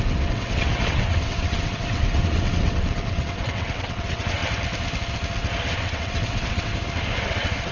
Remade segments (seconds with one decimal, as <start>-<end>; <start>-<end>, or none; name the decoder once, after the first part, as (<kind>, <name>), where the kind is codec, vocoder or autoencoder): 0.0-4.4 (vocoder, WaveNeXt); 5.7-6.7; 7.2-7.7